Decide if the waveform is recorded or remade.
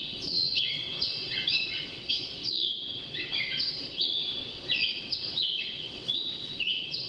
remade